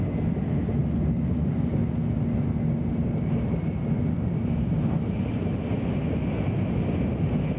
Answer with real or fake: real